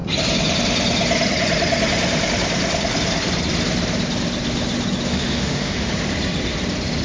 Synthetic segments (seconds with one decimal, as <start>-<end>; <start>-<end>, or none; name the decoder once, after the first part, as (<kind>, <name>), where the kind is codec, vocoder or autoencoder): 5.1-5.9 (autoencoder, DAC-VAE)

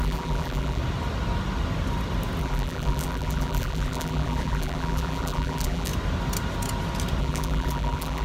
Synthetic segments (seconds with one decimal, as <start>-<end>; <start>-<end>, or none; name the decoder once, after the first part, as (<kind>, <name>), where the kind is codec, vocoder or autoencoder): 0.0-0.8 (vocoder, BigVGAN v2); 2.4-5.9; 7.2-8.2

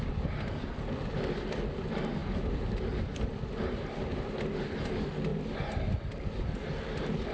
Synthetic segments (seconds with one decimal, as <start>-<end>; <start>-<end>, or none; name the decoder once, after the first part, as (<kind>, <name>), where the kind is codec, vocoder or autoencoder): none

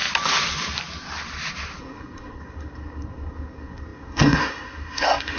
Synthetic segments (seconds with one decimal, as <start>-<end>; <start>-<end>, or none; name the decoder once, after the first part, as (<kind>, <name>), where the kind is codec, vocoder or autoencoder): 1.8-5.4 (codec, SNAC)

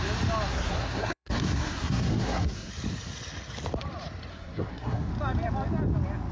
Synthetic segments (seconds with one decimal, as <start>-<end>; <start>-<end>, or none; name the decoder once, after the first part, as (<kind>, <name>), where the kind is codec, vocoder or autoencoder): 0.5-2.7 (codec, SNAC); 4.3-5.1